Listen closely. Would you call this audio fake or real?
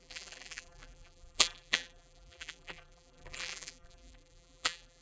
fake